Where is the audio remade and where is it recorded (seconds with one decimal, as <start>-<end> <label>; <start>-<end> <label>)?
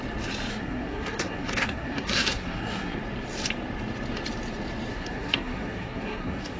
0.0-0.5 recorded; 0.5-3.0 remade; 3.0-4.9 recorded; 4.9-6.6 remade